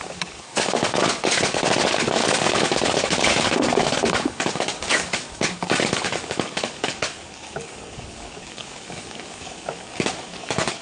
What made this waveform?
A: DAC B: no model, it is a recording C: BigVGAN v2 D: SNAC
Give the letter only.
A